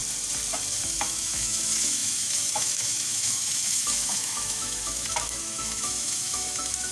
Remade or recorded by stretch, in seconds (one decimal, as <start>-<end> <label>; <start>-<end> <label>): 0.0-0.8 recorded; 0.8-6.9 remade